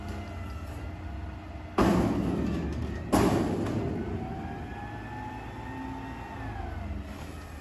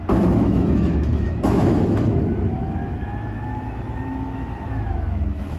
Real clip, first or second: first